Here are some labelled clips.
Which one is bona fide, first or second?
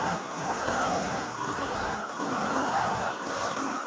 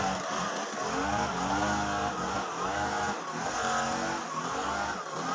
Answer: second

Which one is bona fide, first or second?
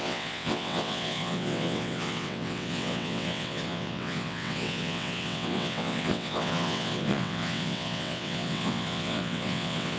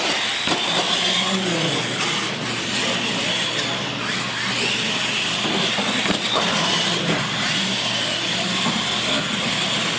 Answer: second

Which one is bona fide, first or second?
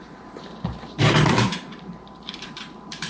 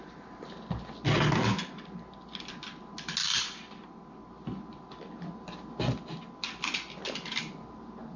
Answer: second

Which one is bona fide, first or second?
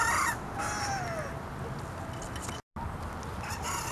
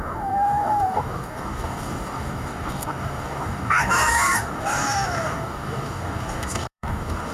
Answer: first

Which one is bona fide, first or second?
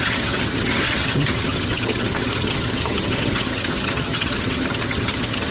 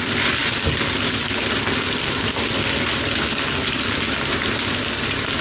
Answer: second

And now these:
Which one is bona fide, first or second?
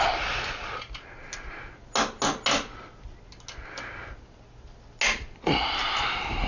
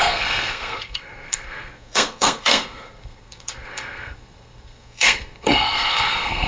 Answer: first